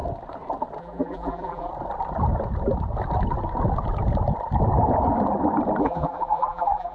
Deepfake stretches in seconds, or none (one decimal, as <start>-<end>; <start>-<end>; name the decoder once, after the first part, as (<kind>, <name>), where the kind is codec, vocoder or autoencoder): 0.8-1.7 (vocoder, BigVGAN v2); 5.8-6.9